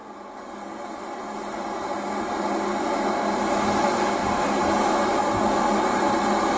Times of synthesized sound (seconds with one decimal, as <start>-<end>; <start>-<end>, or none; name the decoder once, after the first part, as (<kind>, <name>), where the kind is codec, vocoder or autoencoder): none